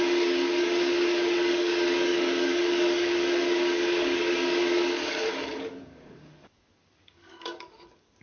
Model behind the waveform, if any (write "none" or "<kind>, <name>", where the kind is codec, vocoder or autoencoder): codec, DAC